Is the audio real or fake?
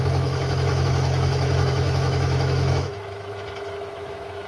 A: fake